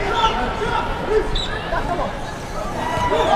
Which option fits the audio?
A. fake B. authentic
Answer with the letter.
B